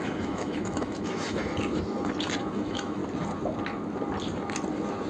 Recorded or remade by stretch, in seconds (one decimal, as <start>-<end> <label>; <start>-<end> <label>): 0.0-1.4 remade; 1.4-2.4 recorded; 2.4-3.0 remade; 3.0-5.1 recorded